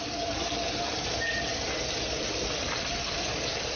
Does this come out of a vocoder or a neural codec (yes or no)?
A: no